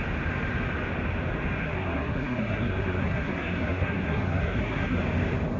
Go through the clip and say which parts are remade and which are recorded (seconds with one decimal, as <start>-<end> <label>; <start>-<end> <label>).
0.0-1.6 recorded; 1.6-5.0 remade; 5.0-5.6 recorded